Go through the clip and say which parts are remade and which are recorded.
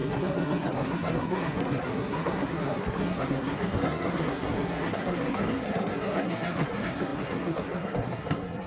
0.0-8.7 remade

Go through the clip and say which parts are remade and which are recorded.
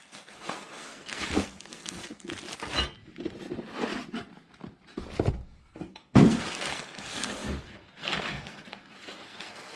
0.0-2.3 remade; 2.3-5.3 recorded; 5.3-9.8 remade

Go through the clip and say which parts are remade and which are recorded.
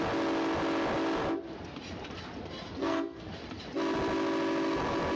0.0-2.8 recorded; 2.8-3.3 remade; 3.3-5.2 recorded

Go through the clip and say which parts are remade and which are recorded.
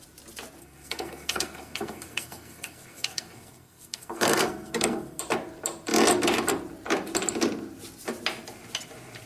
0.0-0.6 recorded; 0.6-5.2 remade; 5.2-9.3 recorded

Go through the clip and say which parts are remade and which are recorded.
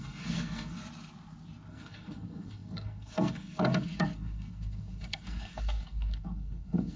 0.0-0.8 remade; 0.8-1.7 recorded; 1.7-7.0 remade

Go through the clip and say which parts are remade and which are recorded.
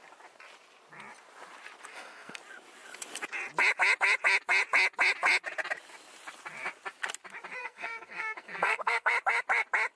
0.0-1.9 recorded; 1.9-2.4 remade; 2.4-7.6 recorded; 7.6-9.1 remade; 9.1-10.0 recorded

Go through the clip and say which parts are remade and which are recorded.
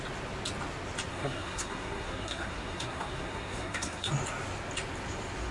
0.0-1.1 recorded; 1.1-4.1 remade; 4.1-5.5 recorded